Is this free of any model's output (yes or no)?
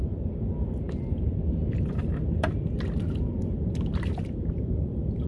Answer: no